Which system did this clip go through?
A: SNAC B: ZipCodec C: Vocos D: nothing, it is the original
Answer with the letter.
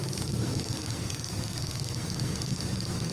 A